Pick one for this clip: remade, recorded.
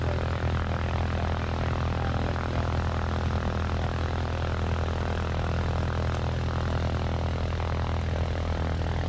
recorded